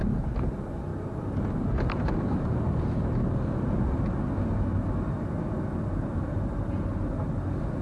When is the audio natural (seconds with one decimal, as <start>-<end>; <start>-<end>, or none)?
0.0-7.8